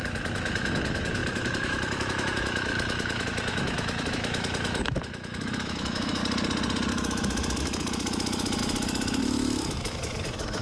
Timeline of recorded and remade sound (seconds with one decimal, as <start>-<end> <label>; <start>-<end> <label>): 0.0-6.2 remade; 6.2-6.9 recorded; 6.9-10.6 remade

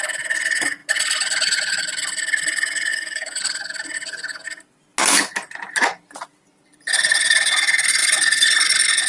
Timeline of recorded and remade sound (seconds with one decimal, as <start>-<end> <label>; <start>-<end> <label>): 0.0-2.9 recorded; 2.9-3.4 remade; 3.4-9.1 recorded

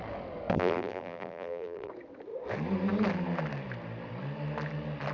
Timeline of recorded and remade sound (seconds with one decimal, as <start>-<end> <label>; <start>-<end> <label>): 0.0-0.5 recorded; 0.5-1.9 remade; 1.9-5.1 recorded

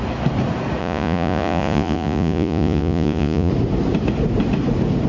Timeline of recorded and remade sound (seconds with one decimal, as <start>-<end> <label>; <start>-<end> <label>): 0.0-0.8 recorded; 0.8-3.5 remade; 3.5-5.1 recorded

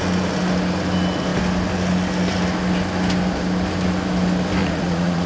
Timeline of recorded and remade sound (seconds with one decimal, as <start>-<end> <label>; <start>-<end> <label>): 0.0-4.6 recorded; 4.6-5.3 remade

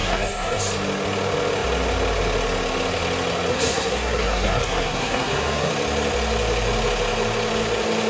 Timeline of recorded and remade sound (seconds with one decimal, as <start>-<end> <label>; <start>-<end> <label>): 0.0-0.6 remade; 0.6-3.5 recorded; 3.5-5.7 remade; 5.7-8.1 recorded